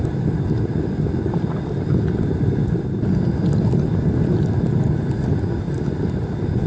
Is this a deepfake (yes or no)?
no